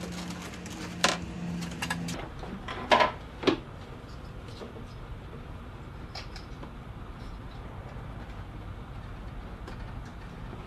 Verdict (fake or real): real